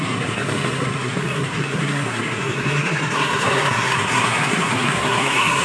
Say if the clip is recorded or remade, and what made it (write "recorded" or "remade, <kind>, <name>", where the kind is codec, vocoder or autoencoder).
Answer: remade, codec, SNAC